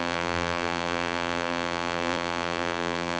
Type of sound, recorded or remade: remade